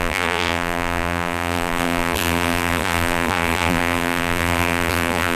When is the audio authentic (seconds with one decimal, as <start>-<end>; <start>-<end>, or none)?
none